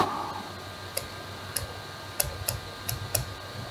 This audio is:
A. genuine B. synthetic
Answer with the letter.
A